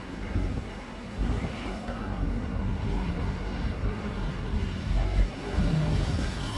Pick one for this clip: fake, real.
fake